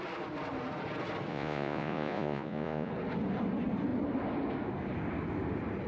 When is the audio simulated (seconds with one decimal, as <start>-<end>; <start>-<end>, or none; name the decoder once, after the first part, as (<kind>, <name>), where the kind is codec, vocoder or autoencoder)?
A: 1.3-2.9 (vocoder, Vocos)